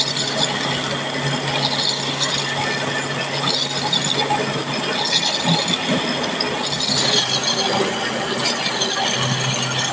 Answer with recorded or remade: recorded